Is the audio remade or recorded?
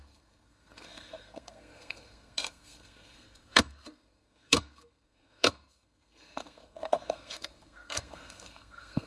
remade